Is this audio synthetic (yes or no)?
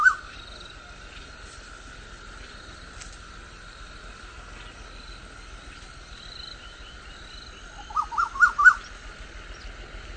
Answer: no